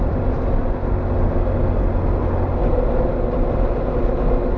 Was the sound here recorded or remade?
recorded